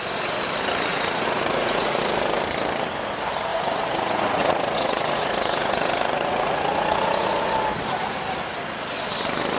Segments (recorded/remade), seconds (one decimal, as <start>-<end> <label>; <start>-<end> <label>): 0.0-0.9 recorded; 0.9-2.0 remade; 2.0-3.5 recorded; 3.5-7.5 remade; 7.5-9.6 recorded